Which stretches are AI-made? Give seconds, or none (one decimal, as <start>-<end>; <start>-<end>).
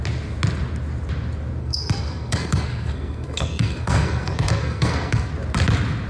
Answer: 1.6-5.3